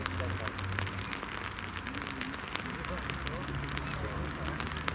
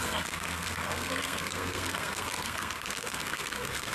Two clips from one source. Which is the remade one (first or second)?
second